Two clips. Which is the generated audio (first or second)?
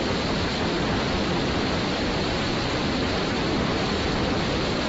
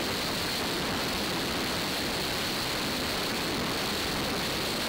first